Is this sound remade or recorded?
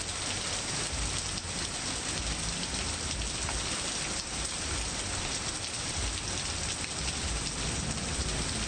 recorded